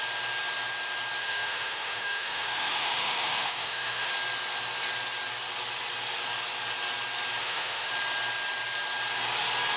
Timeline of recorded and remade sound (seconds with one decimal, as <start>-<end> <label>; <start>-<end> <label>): 0.0-1.2 recorded; 1.2-4.1 remade; 4.1-7.4 recorded; 7.4-7.9 remade; 7.9-9.8 recorded